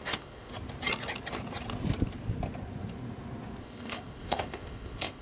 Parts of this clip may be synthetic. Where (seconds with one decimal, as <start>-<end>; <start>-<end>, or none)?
0.0-0.5; 3.6-5.2